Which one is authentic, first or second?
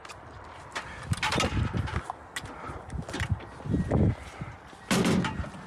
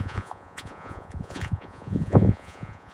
first